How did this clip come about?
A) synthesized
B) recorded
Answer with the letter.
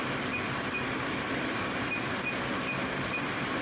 B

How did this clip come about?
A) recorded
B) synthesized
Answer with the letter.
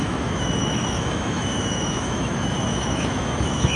B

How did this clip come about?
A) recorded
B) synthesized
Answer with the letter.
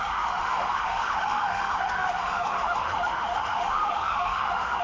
B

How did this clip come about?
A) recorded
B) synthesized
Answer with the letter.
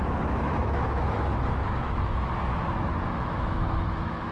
B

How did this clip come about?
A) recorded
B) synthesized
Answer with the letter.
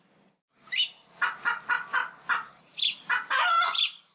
A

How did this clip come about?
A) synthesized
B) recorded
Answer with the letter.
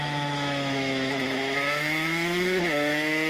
A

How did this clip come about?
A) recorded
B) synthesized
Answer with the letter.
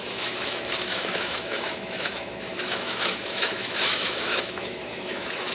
B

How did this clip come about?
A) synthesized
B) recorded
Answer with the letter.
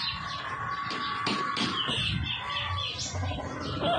B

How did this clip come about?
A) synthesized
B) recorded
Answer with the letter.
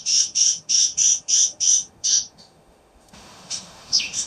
A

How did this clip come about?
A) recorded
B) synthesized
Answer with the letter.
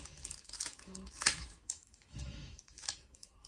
B